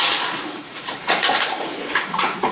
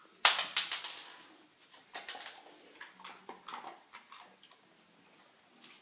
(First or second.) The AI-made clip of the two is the first